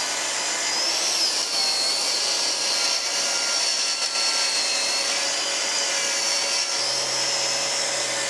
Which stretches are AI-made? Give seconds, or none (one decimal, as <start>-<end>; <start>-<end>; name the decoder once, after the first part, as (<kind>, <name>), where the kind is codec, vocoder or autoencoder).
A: none